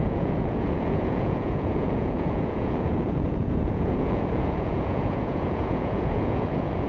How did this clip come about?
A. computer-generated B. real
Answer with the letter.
A